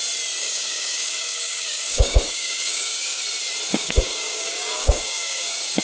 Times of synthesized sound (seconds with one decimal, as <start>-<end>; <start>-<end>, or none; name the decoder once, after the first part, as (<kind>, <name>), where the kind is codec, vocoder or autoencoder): 0.4-3.2 (codec, DAC); 3.7-5.8